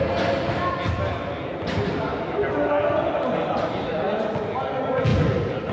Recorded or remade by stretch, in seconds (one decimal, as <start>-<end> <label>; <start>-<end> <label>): 0.0-5.7 recorded